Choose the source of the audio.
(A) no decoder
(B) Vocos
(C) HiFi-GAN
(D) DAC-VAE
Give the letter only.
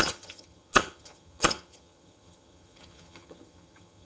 C